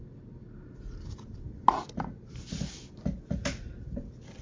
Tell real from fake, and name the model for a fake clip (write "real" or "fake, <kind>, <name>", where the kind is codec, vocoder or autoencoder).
real